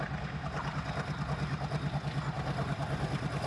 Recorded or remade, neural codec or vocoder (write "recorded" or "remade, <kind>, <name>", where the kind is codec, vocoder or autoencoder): recorded